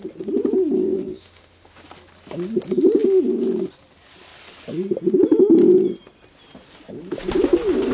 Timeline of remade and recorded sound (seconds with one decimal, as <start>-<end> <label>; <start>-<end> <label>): 0.0-0.8 recorded; 0.8-1.8 remade; 1.8-7.9 recorded